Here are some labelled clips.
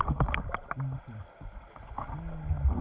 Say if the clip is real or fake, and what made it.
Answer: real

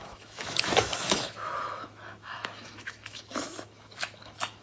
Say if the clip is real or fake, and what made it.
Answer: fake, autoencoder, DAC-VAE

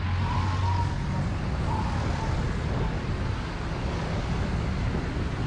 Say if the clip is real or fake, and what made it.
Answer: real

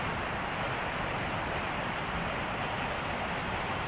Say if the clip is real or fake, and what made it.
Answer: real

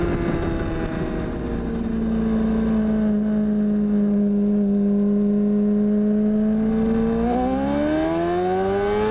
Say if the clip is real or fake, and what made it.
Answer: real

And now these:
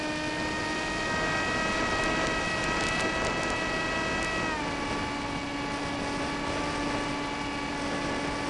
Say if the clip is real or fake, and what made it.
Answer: real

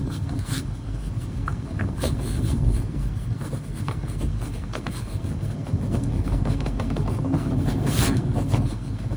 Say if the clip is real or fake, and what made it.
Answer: fake, codec, SNAC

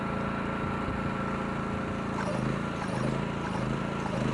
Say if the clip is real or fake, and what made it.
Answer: real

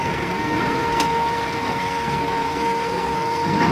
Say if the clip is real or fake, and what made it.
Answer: fake, codec, SNAC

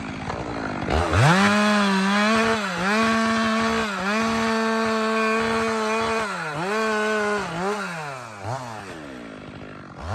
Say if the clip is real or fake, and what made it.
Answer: real